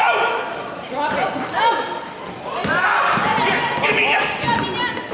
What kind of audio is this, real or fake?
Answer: real